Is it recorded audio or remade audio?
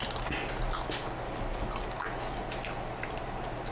recorded